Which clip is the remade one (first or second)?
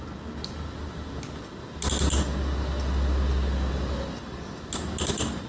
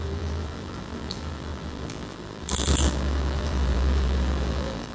second